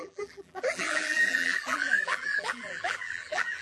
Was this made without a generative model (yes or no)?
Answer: no